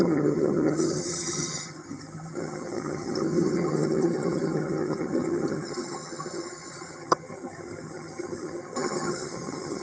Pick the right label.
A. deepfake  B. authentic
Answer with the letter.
A